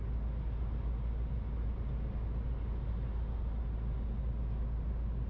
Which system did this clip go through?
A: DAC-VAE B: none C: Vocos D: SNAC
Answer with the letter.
B